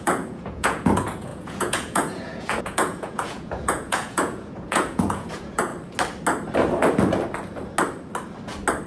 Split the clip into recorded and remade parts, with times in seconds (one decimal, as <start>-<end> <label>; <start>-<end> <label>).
0.0-5.7 remade; 5.7-8.9 recorded